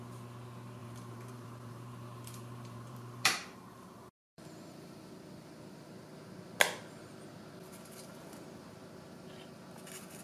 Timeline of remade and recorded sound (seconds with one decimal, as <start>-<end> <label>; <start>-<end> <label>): 0.0-0.8 recorded; 0.8-5.1 remade; 5.1-10.2 recorded